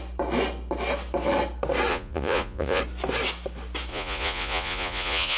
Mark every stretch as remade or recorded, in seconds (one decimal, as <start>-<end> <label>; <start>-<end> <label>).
0.0-1.9 recorded; 1.9-2.8 remade; 2.8-3.9 recorded; 3.9-5.4 remade